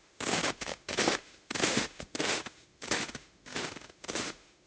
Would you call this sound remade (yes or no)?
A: yes